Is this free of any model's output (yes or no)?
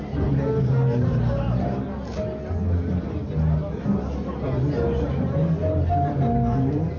yes